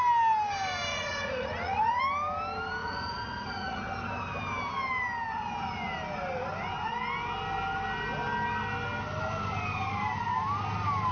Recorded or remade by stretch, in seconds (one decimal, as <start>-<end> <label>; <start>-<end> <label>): 0.0-0.9 recorded; 0.9-2.0 remade; 2.0-2.8 recorded; 2.8-3.8 remade; 3.8-11.1 recorded